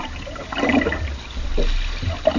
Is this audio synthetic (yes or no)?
no